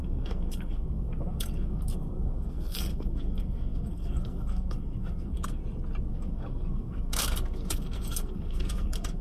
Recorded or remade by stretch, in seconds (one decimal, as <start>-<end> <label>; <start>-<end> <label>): 0.0-5.6 remade; 5.6-6.1 recorded; 6.1-9.2 remade